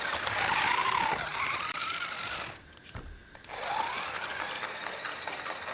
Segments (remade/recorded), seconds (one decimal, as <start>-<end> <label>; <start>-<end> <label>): 0.0-0.8 remade; 0.8-1.4 recorded; 1.4-3.2 remade; 3.2-5.1 recorded; 5.1-5.7 remade